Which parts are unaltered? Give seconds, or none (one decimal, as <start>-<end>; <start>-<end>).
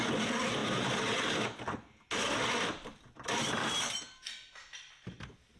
0.0-5.6